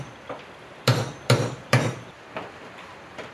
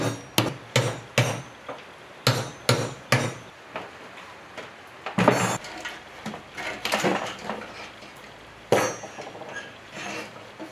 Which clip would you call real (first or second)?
second